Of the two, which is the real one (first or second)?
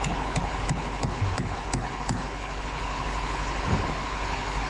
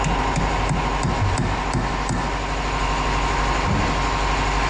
second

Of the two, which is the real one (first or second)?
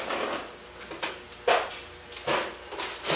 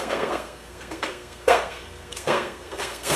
first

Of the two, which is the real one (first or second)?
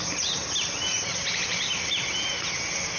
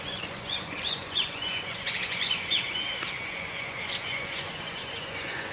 first